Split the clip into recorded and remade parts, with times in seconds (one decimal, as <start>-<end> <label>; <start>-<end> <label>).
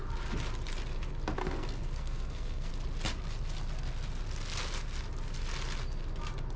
0.0-1.4 recorded; 1.4-2.7 remade; 2.7-6.6 recorded